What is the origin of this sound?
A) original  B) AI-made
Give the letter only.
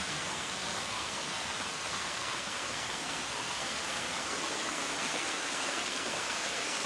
B